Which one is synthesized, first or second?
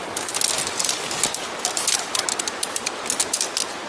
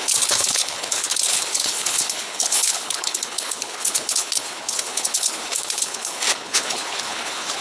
second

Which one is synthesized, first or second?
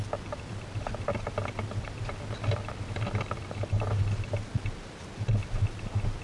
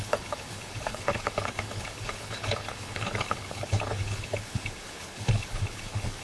second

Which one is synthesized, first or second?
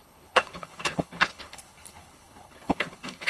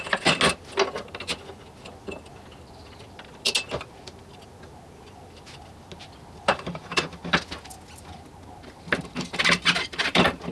first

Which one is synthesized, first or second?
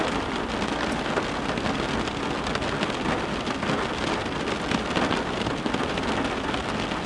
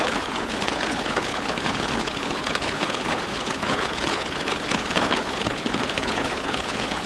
second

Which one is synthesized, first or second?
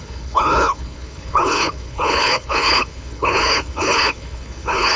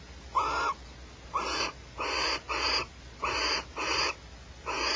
first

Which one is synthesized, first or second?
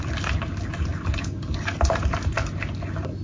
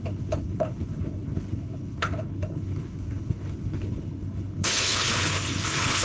second